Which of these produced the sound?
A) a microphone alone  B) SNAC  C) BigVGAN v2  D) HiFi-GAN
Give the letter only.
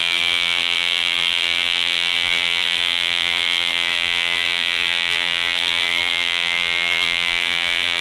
C